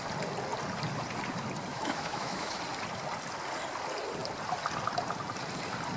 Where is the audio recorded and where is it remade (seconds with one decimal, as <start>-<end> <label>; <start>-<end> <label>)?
0.0-1.7 recorded; 1.7-2.6 remade; 2.6-6.0 recorded